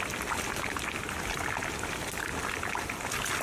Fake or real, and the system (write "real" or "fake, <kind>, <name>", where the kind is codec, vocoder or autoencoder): real